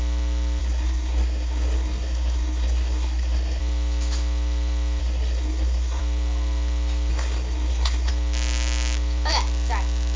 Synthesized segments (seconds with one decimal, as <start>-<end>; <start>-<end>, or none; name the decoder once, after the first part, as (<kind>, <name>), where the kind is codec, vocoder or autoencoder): 0.6-3.6 (codec, SNAC); 5.0-6.0; 7.1-8.1